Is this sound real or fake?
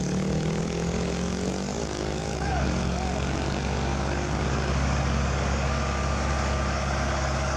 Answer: fake